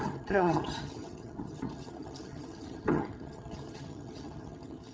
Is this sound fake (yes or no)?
yes